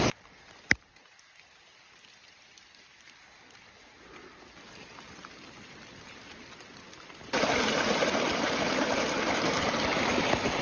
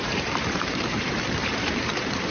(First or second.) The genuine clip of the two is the first